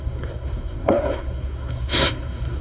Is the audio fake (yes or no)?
yes